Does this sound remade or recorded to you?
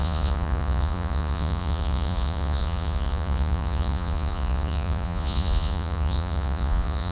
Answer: remade